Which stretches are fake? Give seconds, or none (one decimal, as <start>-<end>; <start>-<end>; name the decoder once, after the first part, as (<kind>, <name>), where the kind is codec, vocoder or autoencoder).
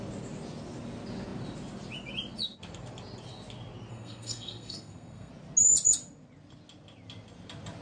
3.9-5.3 (codec, SNAC)